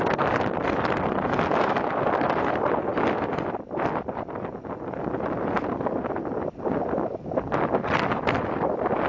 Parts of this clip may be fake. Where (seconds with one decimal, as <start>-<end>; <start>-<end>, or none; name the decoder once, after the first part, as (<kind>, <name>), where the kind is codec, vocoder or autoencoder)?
none